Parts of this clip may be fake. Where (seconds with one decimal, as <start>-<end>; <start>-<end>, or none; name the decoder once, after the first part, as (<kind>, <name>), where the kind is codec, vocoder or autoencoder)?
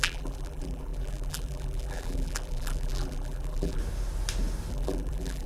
0.0-3.8 (vocoder, BigVGAN v2); 4.7-5.5